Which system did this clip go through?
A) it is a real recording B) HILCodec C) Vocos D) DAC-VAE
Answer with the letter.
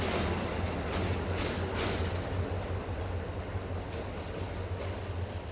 A